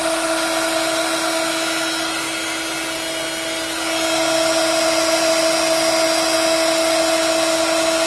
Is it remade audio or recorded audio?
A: recorded